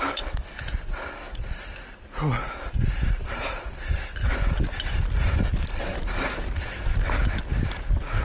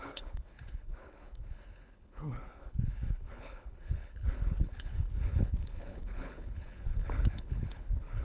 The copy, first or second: second